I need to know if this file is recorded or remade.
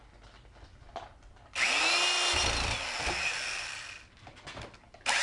recorded